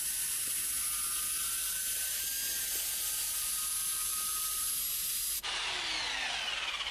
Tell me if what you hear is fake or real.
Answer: real